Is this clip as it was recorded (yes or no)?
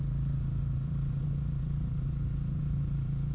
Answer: no